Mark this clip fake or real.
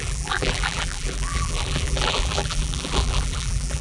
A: fake